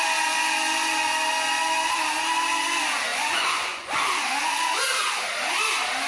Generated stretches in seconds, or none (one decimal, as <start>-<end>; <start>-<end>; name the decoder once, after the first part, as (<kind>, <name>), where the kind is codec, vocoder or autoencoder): 3.1-4.2 (vocoder, Vocos)